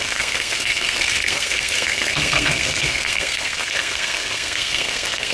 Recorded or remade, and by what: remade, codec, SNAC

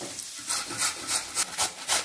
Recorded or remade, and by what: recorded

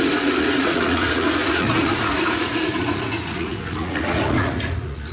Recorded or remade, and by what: remade, vocoder, Vocos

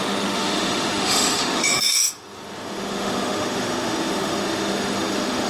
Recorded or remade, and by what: remade, autoencoder, DAC-VAE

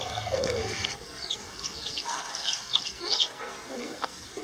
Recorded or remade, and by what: remade, codec, SNAC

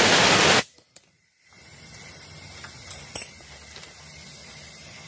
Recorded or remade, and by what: remade, vocoder, BigVGAN v2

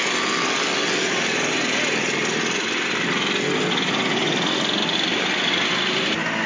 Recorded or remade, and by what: recorded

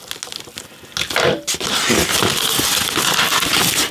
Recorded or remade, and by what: recorded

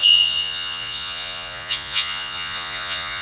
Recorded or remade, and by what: remade, vocoder, Vocos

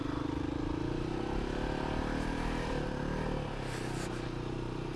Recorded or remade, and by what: recorded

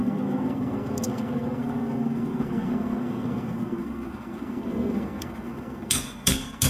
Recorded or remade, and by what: remade, codec, SNAC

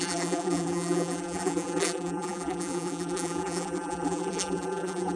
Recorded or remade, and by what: remade, vocoder, BigVGAN v2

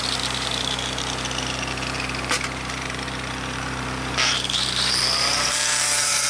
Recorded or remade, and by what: remade, vocoder, BigVGAN v2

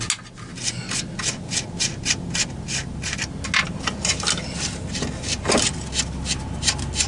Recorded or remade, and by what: recorded